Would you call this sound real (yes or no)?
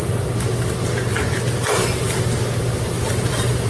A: yes